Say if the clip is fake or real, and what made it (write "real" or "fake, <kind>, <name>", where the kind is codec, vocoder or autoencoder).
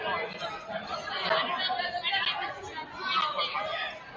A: real